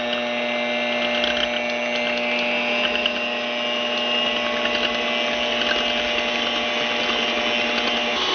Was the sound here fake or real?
real